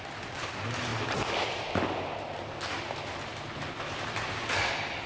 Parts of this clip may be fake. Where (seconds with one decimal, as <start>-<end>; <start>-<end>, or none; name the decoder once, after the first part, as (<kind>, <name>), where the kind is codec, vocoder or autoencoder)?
none